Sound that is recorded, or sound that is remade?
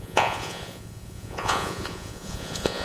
remade